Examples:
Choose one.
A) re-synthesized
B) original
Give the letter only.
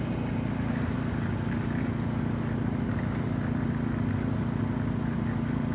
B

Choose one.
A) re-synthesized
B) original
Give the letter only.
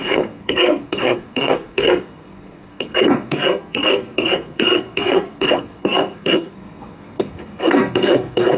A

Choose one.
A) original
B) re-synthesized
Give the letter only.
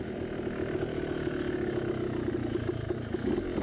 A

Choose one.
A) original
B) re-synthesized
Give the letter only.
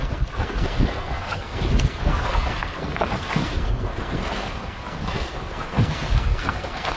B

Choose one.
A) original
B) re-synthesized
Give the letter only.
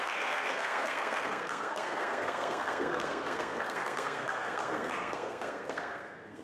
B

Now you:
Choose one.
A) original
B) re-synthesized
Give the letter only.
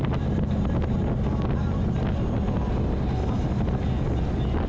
A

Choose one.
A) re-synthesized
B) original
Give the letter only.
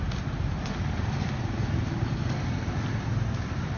B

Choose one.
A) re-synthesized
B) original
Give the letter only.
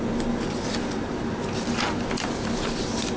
B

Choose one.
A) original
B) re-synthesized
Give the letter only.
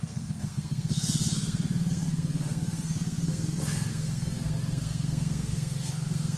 B